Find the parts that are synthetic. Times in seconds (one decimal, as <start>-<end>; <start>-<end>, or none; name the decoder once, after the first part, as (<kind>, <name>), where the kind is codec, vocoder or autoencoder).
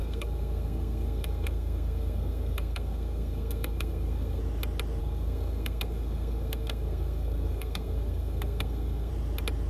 0.0-4.4 (codec, SNAC); 5.0-9.1